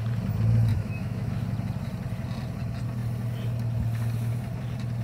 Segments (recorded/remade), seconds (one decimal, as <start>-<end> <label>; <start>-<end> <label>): 0.0-0.7 recorded; 0.7-1.3 remade; 1.3-5.0 recorded